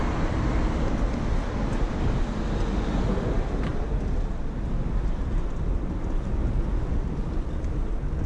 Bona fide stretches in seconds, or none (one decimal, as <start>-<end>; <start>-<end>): 0.0-1.3; 2.2-3.7; 6.7-8.3